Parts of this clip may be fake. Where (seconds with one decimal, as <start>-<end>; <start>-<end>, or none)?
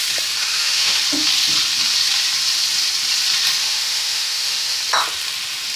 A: 0.4-1.0; 3.6-4.8